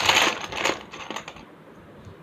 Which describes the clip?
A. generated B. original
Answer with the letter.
B